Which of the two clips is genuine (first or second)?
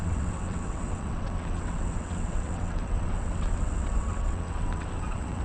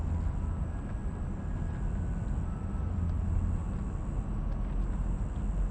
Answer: second